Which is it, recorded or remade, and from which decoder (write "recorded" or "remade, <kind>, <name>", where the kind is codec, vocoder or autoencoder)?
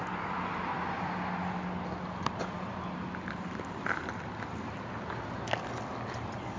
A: recorded